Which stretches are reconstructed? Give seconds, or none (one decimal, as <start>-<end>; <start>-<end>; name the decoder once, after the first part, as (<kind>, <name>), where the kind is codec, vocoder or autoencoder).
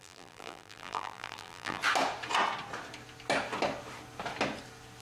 0.0-1.8 (vocoder, BigVGAN v2)